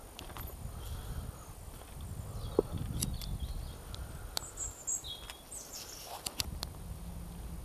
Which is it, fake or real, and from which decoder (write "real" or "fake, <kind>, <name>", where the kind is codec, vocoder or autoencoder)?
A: real